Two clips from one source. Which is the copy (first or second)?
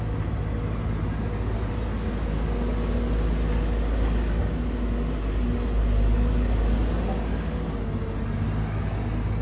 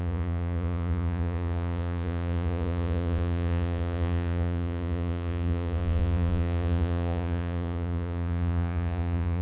second